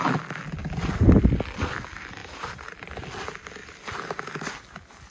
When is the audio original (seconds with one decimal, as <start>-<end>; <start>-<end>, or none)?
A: 0.0-5.1